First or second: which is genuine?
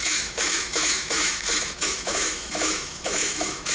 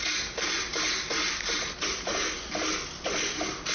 second